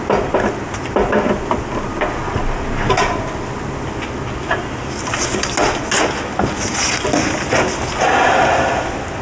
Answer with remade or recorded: recorded